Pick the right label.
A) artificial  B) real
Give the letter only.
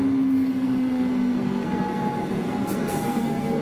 A